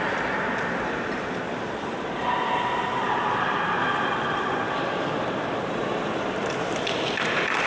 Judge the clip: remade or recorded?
remade